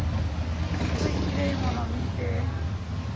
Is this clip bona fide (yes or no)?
yes